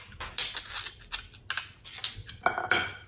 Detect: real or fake real